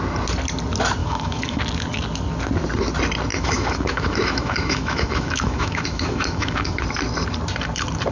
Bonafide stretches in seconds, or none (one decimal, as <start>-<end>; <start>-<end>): 0.0-1.0; 1.6-3.3; 6.8-8.1